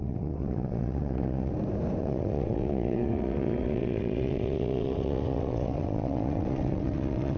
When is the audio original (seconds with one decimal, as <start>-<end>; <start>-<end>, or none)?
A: 1.5-2.0